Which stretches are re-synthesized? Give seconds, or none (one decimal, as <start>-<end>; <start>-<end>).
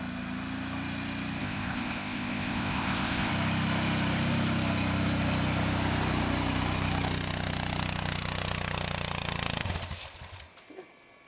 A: 1.4-3.3